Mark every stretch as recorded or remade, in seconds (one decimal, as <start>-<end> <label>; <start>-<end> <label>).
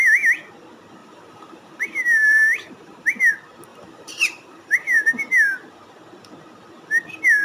0.0-1.0 recorded; 1.0-3.3 remade; 3.3-3.7 recorded; 3.7-5.2 remade; 5.2-7.4 recorded